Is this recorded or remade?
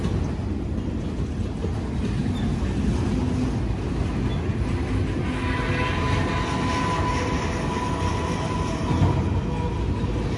recorded